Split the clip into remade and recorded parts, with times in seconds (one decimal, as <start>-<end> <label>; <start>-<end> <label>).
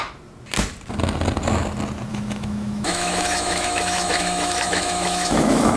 0.0-2.1 recorded; 2.1-5.8 remade